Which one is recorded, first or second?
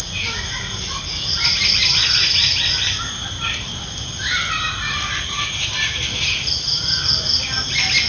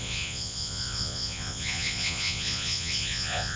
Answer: first